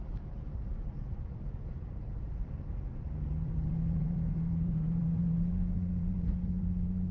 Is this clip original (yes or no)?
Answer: no